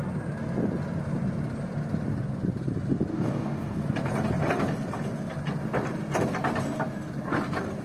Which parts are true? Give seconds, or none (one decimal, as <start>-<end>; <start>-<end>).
0.0-3.1; 3.8-7.8